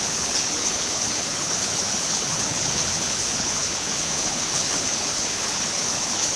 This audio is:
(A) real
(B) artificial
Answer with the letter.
B